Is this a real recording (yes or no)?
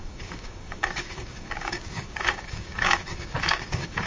no